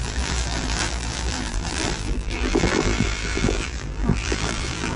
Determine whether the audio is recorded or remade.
remade